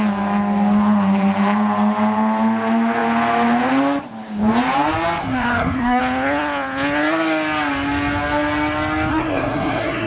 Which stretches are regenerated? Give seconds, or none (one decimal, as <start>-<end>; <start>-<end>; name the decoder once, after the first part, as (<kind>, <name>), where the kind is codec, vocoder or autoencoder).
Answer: 5.2-6.0 (codec, SNAC); 9.1-10.1